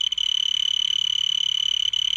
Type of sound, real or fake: real